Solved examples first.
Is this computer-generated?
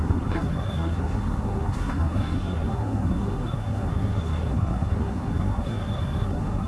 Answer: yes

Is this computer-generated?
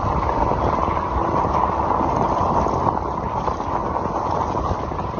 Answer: no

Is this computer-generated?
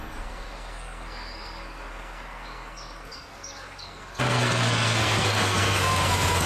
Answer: yes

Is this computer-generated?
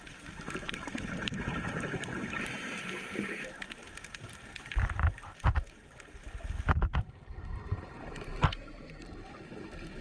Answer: yes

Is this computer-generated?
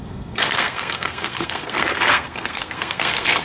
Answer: yes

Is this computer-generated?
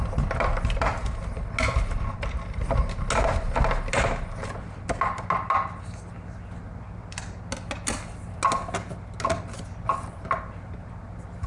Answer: no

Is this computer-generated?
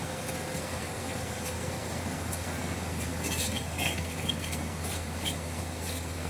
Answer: yes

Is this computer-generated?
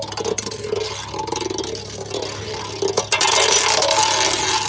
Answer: no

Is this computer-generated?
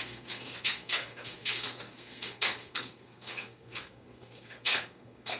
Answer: yes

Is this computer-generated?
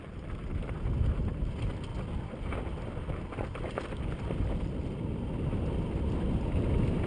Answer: no